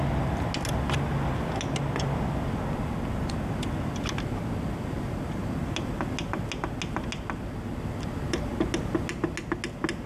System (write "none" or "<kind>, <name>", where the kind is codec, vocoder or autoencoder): none